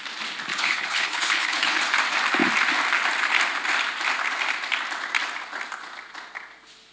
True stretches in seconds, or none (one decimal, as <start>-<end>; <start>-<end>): 0.0-0.5; 1.8-6.9

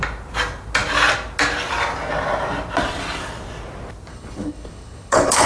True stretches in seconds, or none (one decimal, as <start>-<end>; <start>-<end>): 0.0-4.1

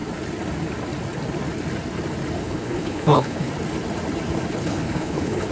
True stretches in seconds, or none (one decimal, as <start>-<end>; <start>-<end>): 0.0-2.4; 3.5-4.6

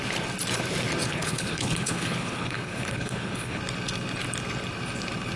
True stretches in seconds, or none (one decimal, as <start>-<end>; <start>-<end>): 0.0-1.1; 3.6-5.4